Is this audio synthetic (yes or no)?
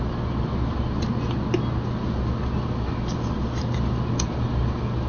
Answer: no